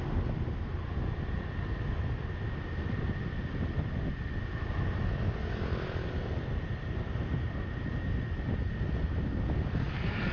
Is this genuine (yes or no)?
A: yes